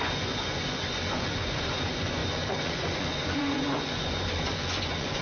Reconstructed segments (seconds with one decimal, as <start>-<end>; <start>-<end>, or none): 0.0-5.2

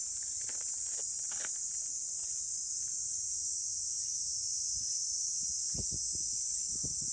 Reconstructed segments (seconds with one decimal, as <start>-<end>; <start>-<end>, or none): 3.9-4.7

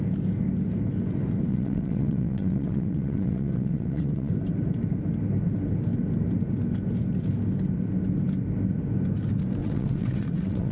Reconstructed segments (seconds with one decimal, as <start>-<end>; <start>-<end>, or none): 1.5-4.3; 9.6-10.7

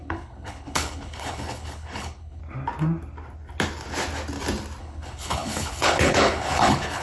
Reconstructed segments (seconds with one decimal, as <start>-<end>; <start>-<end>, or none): 0.0-2.4; 4.8-7.0

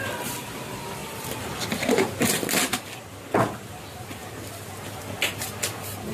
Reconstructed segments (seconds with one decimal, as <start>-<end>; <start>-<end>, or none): 1.0-2.9; 4.2-5.0